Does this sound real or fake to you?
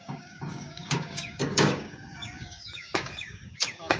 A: fake